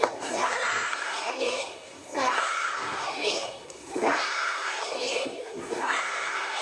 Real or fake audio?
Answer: fake